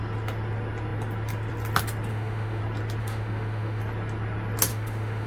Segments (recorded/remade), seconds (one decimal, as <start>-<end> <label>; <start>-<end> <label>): 0.0-2.1 recorded; 2.1-2.6 remade; 2.6-3.0 recorded; 3.0-3.8 remade; 3.8-4.7 recorded; 4.7-5.3 remade